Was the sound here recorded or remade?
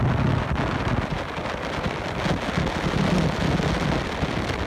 recorded